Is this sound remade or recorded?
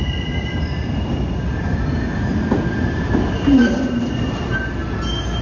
recorded